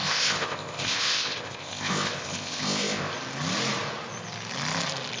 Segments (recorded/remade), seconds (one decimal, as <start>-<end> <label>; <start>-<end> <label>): 0.0-3.1 remade; 3.1-5.2 recorded